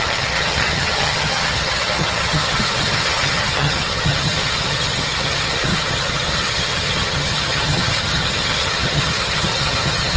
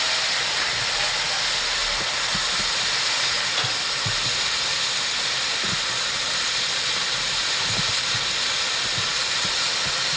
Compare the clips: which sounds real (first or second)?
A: second